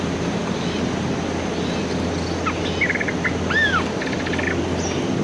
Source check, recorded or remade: recorded